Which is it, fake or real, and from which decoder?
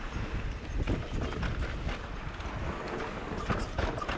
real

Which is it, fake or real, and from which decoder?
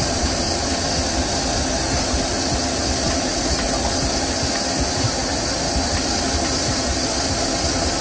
fake, vocoder, BigVGAN v2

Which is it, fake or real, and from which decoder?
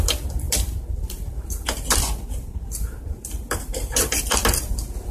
fake, vocoder, BigVGAN v2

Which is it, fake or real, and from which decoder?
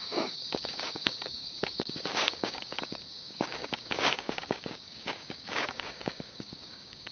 fake, codec, DAC